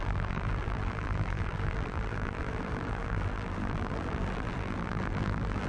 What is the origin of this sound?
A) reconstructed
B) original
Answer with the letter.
A